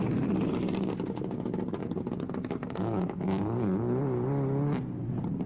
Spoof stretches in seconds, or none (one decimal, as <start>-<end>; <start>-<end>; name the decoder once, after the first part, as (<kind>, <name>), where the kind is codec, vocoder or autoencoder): 1.8-2.3 (vocoder, BigVGAN v2)